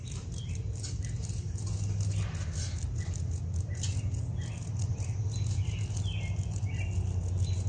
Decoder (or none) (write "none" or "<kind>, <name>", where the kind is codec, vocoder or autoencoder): none